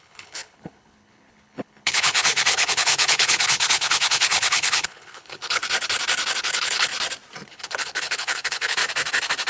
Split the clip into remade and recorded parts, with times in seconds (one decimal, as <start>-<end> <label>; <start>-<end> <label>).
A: 0.0-5.6 remade; 5.6-6.4 recorded; 6.4-6.9 remade; 6.9-7.5 recorded; 7.5-8.8 remade; 8.8-9.5 recorded